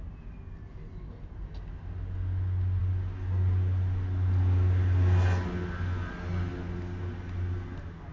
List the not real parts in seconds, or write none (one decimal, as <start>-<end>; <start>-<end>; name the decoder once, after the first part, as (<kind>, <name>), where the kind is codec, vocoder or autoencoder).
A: none